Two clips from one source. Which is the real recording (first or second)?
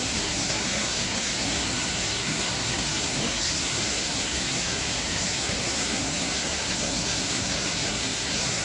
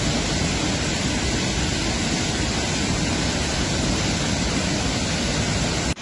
second